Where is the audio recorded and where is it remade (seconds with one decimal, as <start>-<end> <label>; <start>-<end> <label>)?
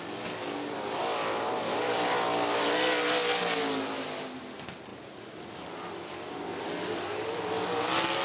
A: 0.0-8.2 recorded